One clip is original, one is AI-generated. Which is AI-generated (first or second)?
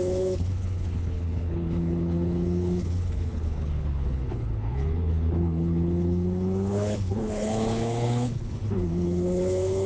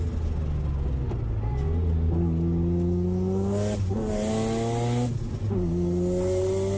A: first